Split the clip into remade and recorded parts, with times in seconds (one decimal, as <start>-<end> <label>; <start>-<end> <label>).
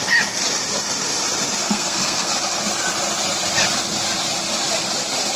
0.0-1.6 recorded; 1.6-2.3 remade; 2.3-5.4 recorded